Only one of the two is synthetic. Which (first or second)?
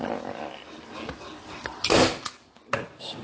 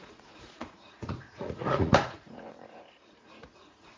second